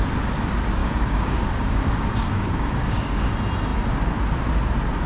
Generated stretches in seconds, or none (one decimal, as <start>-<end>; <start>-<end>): 0.8-3.3